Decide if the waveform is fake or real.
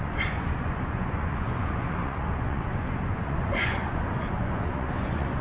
fake